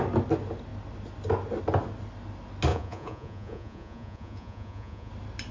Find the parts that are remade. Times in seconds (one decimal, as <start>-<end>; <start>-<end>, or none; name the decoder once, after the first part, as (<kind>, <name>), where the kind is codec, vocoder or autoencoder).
2.7-5.1 (vocoder, Vocos)

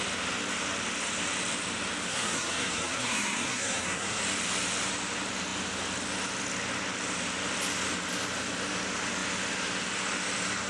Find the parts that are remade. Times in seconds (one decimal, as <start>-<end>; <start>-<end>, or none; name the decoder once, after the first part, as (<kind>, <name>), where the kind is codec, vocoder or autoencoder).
2.1-4.2 (codec, SNAC)

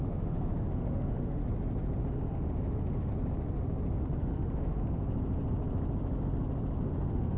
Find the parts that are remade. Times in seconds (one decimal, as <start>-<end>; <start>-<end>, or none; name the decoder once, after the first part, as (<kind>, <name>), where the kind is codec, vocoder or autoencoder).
0.0-1.4 (autoencoder, DAC-VAE); 2.1-3.1; 4.0-5.0; 6.9-7.4

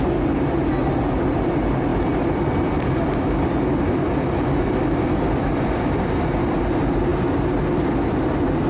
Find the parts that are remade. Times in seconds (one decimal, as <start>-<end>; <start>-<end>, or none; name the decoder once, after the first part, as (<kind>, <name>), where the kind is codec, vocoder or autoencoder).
1.9-6.1 (vocoder, BigVGAN v2)

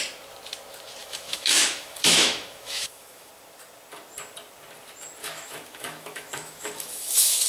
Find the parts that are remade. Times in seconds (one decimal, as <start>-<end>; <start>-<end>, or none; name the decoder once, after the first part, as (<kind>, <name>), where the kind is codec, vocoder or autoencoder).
1.0-3.3 (autoencoder, DAC-VAE); 5.2-7.5

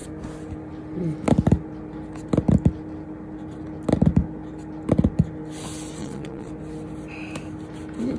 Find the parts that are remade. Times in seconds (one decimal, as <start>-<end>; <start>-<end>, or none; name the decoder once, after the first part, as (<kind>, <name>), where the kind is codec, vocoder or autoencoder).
6.0-6.5 (vocoder, Vocos)